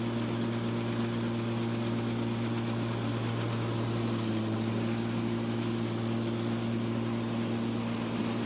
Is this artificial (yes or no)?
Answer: no